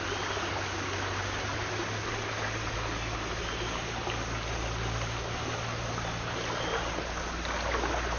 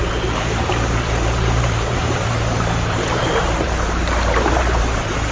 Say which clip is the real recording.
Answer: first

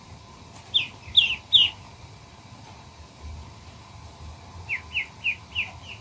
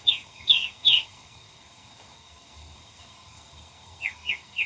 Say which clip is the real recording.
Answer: first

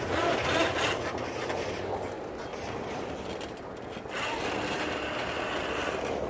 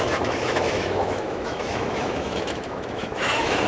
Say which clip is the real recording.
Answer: first